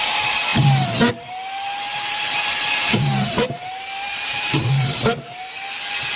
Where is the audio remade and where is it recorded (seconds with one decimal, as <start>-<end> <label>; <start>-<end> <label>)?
0.0-1.9 recorded; 1.9-5.0 remade; 5.0-6.2 recorded